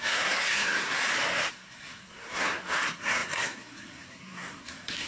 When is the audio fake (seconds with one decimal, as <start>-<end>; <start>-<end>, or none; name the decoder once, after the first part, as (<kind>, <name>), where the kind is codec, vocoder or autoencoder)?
0.0-1.0 (codec, SNAC); 1.5-5.1